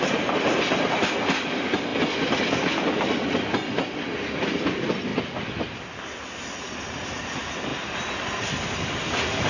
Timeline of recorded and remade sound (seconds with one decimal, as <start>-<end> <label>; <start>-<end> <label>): 0.0-9.5 recorded